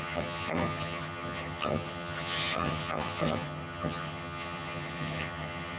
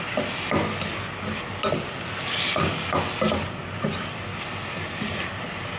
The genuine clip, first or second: second